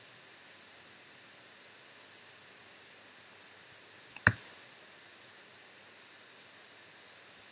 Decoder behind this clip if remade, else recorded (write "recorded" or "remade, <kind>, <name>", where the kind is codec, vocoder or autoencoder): recorded